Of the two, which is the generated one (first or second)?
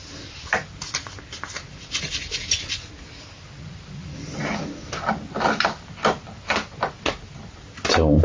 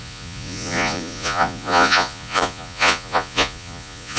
second